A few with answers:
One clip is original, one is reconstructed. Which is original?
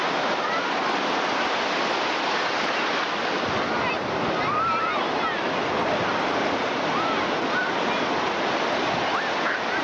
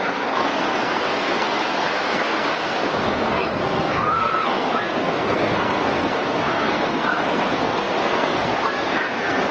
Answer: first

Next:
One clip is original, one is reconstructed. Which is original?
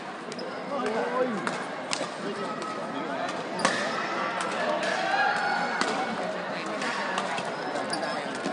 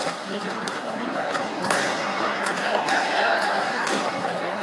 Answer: first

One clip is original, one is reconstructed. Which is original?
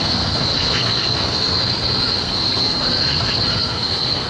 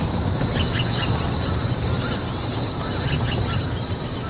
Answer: second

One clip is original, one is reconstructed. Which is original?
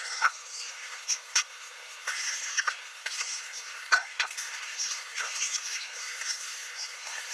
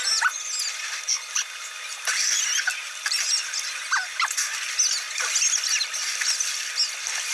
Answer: second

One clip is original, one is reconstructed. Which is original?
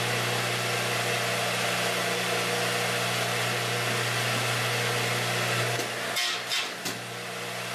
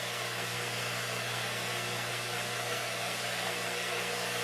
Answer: first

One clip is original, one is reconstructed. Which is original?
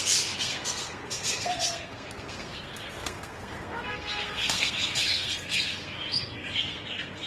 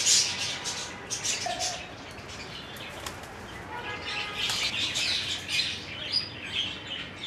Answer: second